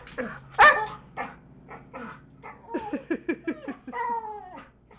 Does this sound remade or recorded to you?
recorded